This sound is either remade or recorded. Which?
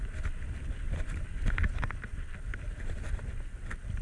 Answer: recorded